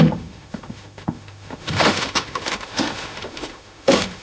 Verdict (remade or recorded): remade